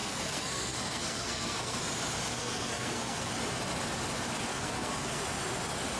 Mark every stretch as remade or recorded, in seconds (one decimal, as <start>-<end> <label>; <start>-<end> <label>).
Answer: 0.0-1.8 remade; 1.8-2.3 recorded; 2.3-3.3 remade; 3.3-4.5 recorded; 4.5-5.2 remade; 5.2-6.0 recorded